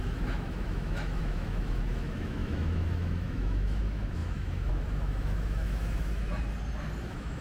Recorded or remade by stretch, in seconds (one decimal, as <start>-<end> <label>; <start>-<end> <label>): 0.0-6.3 remade; 6.3-7.0 recorded; 7.0-7.4 remade